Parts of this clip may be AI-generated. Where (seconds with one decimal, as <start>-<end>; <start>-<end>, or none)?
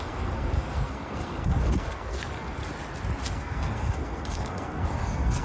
0.0-2.6; 3.3-5.4